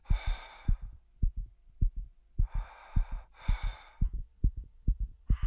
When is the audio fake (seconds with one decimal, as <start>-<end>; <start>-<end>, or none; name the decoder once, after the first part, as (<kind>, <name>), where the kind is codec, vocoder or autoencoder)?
none

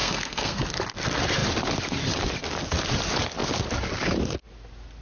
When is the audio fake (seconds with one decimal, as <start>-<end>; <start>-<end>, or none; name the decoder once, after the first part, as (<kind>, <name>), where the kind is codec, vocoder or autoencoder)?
0.0-0.6 (codec, SNAC)